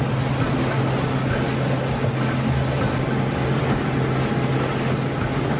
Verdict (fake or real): real